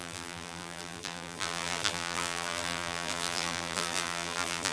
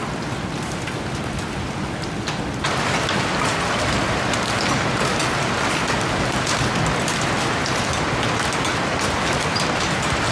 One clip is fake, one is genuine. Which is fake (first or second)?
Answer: first